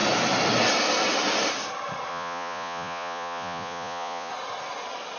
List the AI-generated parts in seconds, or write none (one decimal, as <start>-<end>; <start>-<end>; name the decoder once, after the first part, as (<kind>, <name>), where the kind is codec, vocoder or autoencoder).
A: 2.1-4.3 (vocoder, Vocos)